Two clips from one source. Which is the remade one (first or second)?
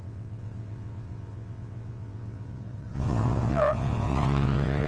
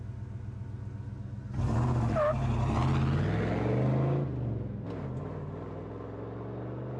first